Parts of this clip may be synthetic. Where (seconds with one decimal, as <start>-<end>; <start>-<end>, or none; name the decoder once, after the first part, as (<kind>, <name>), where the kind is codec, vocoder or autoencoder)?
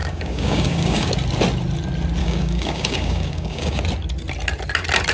0.0-1.1 (codec, DAC); 2.2-3.8